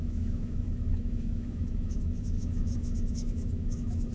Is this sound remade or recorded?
remade